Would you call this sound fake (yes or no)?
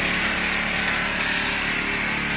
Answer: no